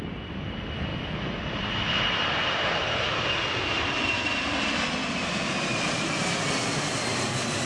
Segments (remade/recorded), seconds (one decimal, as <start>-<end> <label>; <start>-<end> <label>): 0.0-7.7 recorded